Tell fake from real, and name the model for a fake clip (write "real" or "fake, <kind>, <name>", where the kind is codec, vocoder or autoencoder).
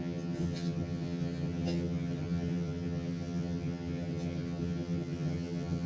fake, vocoder, HiFi-GAN